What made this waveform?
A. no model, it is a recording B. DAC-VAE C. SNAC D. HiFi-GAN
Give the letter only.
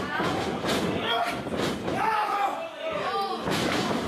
A